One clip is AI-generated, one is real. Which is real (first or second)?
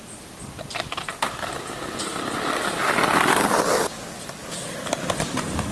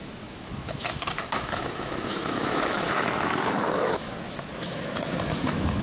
first